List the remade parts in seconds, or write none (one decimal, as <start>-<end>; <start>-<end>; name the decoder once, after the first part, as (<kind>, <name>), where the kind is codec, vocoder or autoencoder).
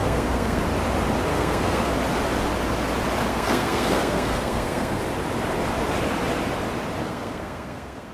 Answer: 0.0-0.6 (codec, SNAC); 1.3-1.9; 3.3-5.0; 7.0-8.1